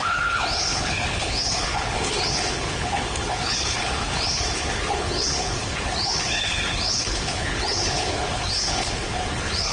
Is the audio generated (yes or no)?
yes